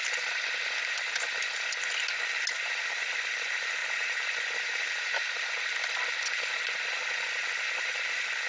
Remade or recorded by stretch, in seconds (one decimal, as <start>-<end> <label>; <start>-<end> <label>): 0.0-8.5 recorded